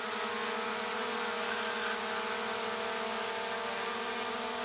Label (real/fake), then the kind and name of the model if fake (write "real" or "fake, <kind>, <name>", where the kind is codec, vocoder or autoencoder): real